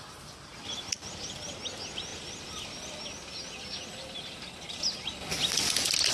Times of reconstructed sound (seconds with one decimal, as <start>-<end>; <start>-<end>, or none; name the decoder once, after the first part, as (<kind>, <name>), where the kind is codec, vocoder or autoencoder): none